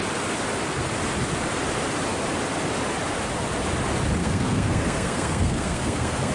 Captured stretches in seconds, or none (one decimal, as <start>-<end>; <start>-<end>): 0.0-4.2